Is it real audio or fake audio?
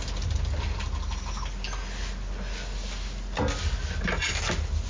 real